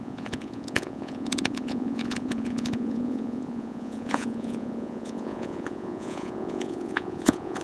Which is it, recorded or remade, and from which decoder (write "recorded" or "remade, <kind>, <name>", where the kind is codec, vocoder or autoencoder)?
remade, vocoder, Vocos